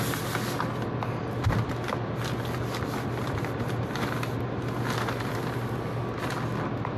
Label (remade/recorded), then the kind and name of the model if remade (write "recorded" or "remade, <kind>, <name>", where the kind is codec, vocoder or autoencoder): recorded